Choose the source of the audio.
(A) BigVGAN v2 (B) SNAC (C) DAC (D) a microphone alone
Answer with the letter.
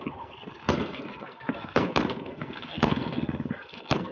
B